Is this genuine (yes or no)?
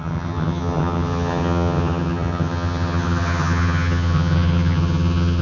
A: no